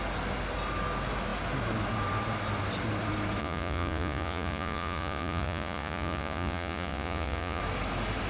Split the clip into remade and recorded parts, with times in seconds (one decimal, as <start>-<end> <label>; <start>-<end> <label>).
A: 0.0-3.4 recorded; 3.4-7.6 remade; 7.6-8.3 recorded